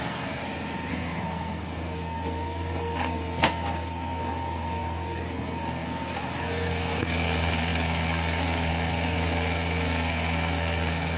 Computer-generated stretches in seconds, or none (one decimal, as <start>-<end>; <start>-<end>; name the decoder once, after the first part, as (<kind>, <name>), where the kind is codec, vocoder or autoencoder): 0.0-0.4 (codec, SNAC); 0.9-11.2